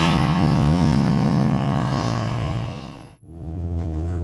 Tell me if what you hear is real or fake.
fake